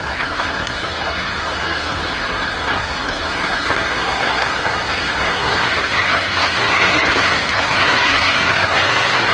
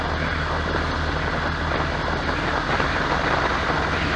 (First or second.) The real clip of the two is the second